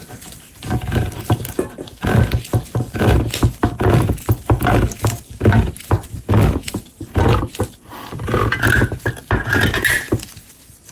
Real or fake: real